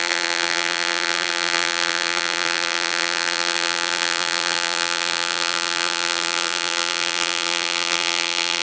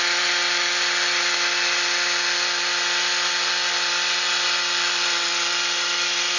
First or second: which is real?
second